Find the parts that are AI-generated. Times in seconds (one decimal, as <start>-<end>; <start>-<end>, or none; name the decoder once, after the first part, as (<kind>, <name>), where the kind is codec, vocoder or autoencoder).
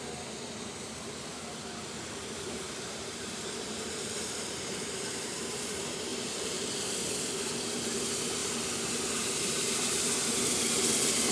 1.3-5.4 (vocoder, BigVGAN v2); 6.1-6.9; 8.4-10.1